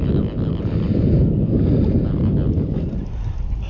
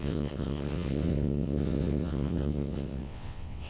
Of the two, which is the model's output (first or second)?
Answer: second